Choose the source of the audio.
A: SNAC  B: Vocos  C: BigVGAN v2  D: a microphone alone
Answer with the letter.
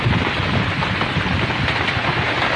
D